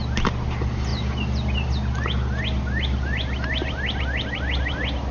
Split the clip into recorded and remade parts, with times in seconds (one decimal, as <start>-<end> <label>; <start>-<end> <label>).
0.0-5.1 recorded